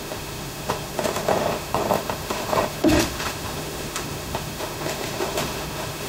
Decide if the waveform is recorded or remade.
remade